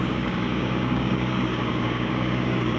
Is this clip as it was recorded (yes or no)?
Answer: no